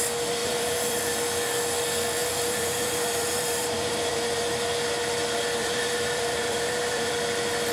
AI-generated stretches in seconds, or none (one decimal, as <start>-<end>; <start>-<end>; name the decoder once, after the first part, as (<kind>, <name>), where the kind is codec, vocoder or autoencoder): 0.4-1.0 (vocoder, BigVGAN v2); 2.2-4.4; 5.6-7.1